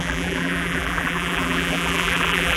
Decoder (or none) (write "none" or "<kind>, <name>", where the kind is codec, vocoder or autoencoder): vocoder, BigVGAN v2